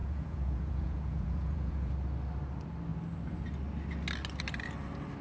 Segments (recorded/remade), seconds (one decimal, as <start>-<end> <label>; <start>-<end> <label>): 0.0-1.9 remade; 1.9-5.2 recorded